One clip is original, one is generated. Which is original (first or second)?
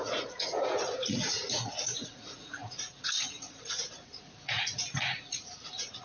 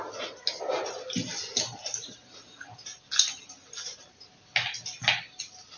second